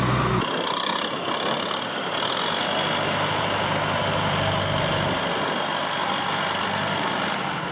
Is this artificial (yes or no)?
no